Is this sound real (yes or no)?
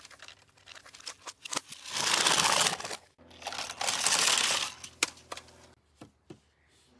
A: yes